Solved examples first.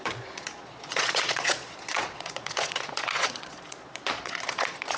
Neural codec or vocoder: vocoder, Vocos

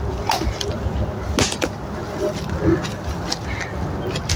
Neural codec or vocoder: none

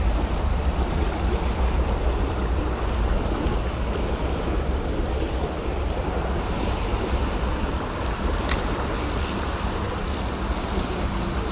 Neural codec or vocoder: none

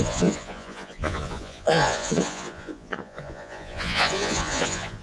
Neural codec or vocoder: vocoder, Vocos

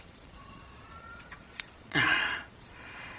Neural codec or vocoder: vocoder, Vocos